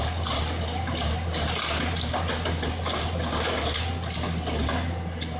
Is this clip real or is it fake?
real